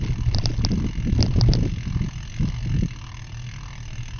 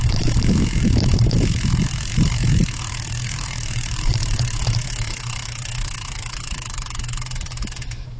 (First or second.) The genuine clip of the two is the first